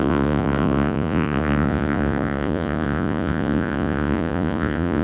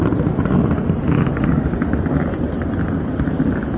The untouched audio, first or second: second